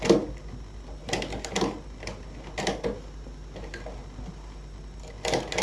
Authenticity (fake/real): real